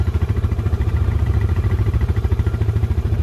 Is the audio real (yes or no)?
no